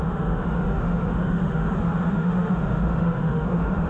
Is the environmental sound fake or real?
fake